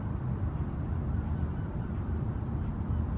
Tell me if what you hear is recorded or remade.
recorded